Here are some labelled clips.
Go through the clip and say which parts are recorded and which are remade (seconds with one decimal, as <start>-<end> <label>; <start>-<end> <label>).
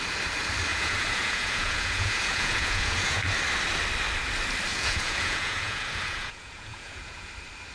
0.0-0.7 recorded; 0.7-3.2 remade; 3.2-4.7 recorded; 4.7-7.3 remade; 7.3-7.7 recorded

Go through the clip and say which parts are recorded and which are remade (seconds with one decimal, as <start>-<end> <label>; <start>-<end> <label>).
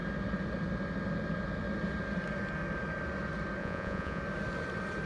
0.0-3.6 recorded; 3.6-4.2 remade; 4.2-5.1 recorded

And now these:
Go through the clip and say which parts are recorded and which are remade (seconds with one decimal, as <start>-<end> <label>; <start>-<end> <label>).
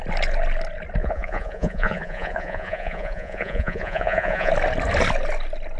0.0-1.0 recorded; 1.0-4.5 remade; 4.5-5.8 recorded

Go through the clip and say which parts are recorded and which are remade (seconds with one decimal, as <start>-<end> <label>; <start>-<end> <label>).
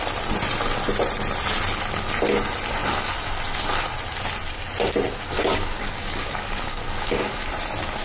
0.0-5.5 recorded; 5.5-7.5 remade; 7.5-8.0 recorded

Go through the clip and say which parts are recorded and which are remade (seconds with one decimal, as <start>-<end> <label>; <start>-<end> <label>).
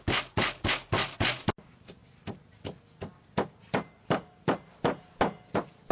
0.0-5.9 recorded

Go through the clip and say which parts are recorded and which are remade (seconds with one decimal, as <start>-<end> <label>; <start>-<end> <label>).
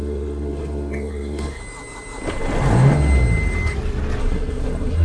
0.0-1.6 remade; 1.6-4.2 recorded; 4.2-5.0 remade